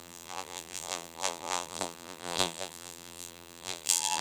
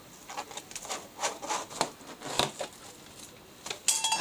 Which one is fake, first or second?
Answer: first